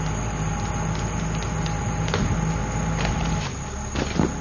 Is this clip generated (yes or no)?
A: no